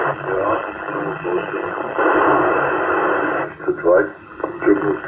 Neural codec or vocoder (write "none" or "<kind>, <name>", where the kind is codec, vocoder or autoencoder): none